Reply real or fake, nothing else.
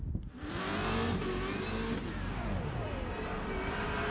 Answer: real